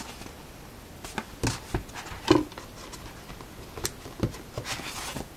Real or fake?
real